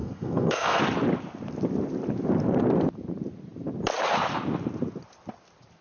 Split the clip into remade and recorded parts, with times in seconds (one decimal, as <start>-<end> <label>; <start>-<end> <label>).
0.0-0.8 remade; 0.8-5.8 recorded